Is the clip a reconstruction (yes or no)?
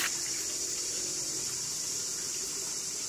no